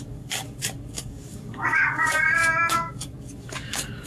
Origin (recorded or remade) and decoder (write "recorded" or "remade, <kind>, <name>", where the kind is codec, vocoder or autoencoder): remade, codec, DAC